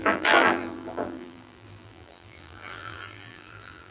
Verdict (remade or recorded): remade